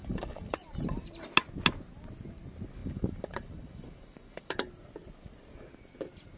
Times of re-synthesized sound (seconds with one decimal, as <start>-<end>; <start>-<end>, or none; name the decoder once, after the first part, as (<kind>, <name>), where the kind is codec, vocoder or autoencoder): 0.0-1.0 (vocoder, BigVGAN v2); 2.8-4.7